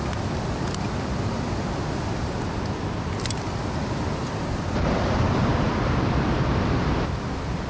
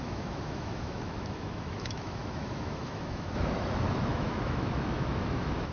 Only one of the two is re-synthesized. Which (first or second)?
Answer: second